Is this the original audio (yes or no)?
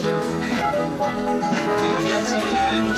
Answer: no